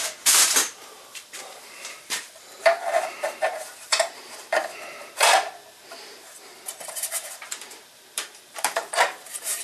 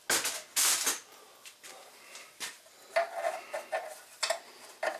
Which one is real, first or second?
second